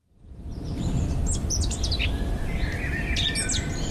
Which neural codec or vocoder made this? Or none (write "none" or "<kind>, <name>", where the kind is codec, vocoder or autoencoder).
vocoder, BigVGAN v2